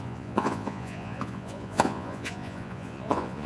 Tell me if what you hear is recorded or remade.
remade